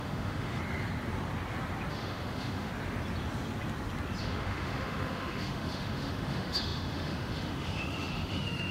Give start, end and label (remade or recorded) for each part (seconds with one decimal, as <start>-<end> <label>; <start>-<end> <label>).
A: 0.0-0.6 remade; 0.6-1.9 recorded; 1.9-2.7 remade; 2.7-4.2 recorded; 4.2-8.7 remade

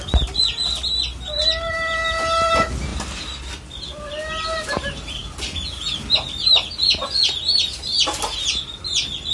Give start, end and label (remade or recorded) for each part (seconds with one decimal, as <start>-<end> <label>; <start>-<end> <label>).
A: 0.0-9.3 recorded

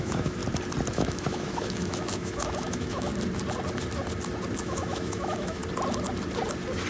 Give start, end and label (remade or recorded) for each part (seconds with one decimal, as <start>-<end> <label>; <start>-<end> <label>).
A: 0.0-0.4 remade; 0.4-0.9 recorded; 0.9-3.1 remade; 3.1-4.6 recorded; 4.6-5.6 remade; 5.6-6.9 recorded